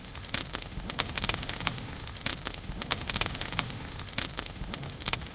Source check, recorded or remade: remade